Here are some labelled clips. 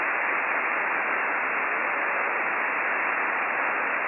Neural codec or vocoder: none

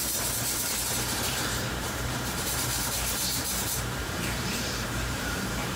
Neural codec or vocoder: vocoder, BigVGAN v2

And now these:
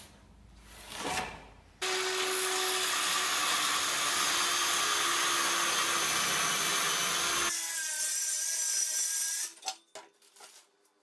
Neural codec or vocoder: none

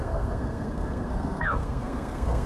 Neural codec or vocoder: codec, SNAC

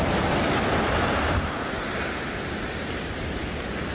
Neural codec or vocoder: none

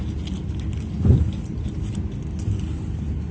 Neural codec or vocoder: none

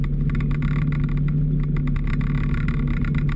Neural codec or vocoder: none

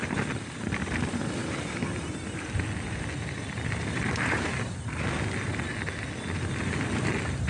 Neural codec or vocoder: none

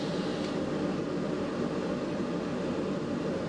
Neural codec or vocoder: none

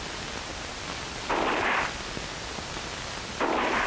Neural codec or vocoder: none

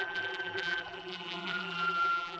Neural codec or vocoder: vocoder, BigVGAN v2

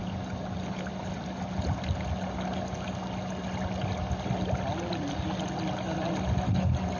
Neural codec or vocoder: none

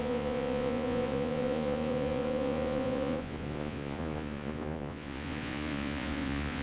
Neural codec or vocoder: vocoder, Vocos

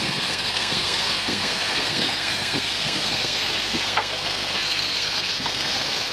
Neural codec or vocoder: codec, SNAC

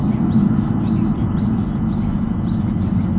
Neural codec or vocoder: none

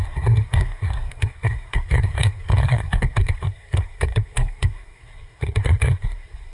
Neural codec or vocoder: codec, SNAC